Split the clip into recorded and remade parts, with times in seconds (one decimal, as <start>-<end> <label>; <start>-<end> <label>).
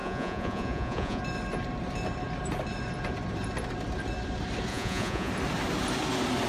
0.0-1.2 remade; 1.2-4.7 recorded; 4.7-5.3 remade; 5.3-6.5 recorded